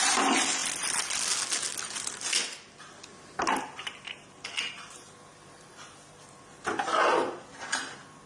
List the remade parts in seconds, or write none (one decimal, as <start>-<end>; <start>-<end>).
none